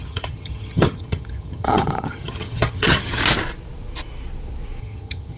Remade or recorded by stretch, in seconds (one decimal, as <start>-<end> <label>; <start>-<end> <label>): 0.0-3.2 remade; 3.2-4.8 recorded; 4.8-5.4 remade